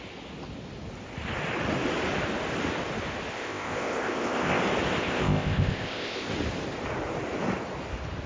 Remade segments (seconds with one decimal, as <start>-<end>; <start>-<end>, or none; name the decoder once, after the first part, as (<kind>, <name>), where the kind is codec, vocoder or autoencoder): 3.3-4.6 (codec, ZipCodec); 5.0-6.3